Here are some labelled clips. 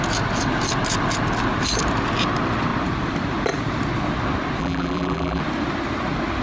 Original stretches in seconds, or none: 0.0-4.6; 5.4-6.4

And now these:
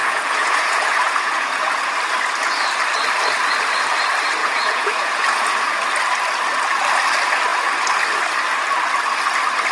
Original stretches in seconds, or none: 1.9-4.4; 5.7-9.7

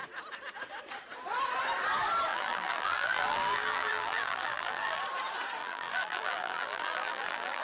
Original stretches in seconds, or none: 0.0-2.3; 5.0-5.6

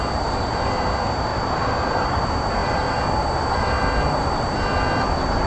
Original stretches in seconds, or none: 0.0-1.3; 2.2-5.5

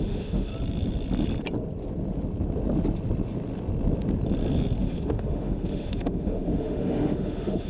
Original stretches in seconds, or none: 0.5-4.8

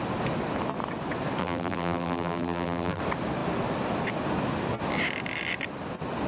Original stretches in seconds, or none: 0.0-1.4; 3.0-6.3

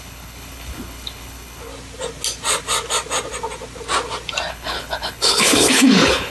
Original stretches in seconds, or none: 1.7-4.5

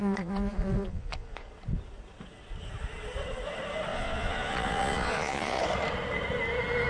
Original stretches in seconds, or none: 1.5-3.9; 5.6-6.9